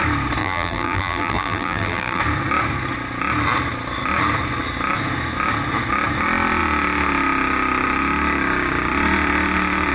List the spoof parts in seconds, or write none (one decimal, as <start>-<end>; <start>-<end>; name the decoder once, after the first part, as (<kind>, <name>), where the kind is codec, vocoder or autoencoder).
0.4-2.2 (vocoder, BigVGAN v2)